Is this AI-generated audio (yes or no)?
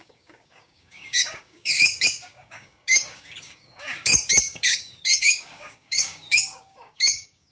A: yes